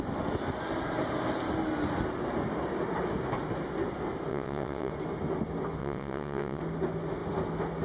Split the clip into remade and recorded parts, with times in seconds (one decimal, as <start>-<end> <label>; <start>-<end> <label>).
0.0-4.3 recorded; 4.3-4.9 remade; 4.9-5.8 recorded; 5.8-6.6 remade; 6.6-7.8 recorded